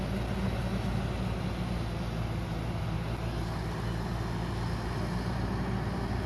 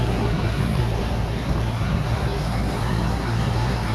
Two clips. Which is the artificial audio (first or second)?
second